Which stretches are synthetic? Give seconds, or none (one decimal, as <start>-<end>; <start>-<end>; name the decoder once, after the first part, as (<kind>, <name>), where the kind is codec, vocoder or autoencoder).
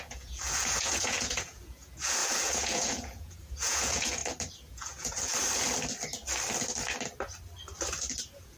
0.0-4.2 (vocoder, Vocos); 4.7-5.3; 8.2-8.6